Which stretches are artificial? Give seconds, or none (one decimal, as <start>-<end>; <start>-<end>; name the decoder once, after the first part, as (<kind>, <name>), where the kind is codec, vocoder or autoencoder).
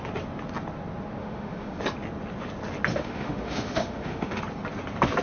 1.2-1.8 (autoencoder, DAC-VAE); 2.9-4.4